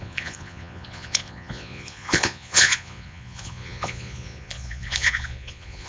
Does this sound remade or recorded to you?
remade